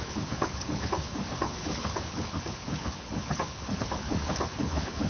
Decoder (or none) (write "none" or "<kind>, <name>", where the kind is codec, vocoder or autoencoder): codec, HILCodec